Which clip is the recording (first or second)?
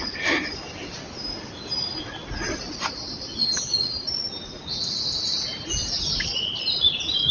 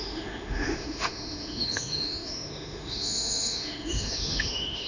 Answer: first